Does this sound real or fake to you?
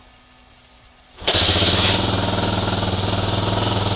real